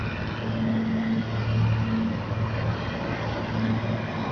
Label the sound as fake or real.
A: real